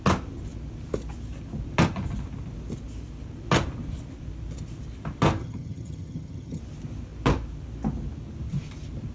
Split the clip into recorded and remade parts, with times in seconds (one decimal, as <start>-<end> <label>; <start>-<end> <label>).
0.0-5.4 recorded; 5.4-6.6 remade; 6.6-9.1 recorded